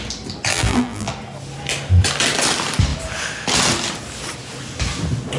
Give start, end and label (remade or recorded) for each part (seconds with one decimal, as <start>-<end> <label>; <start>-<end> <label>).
0.0-0.5 recorded; 0.5-1.1 remade; 1.1-5.4 recorded